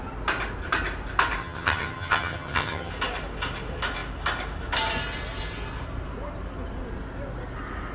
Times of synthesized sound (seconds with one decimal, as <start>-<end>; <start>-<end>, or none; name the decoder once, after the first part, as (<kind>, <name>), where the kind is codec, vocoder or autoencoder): 1.4-2.9 (vocoder, HiFi-GAN)